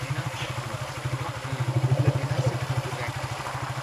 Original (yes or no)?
yes